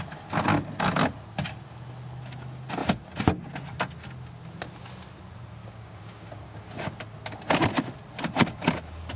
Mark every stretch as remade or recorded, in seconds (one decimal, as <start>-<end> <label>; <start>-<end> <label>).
0.0-5.6 recorded; 5.6-6.6 remade; 6.6-9.2 recorded